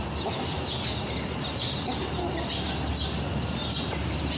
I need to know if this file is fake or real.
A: real